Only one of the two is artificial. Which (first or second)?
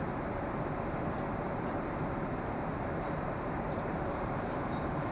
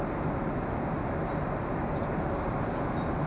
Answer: first